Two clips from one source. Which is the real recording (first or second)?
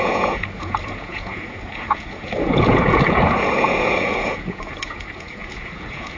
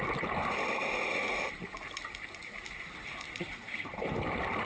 second